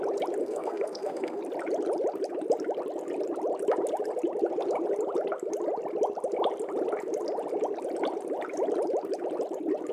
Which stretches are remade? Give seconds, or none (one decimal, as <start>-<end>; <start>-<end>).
0.4-1.4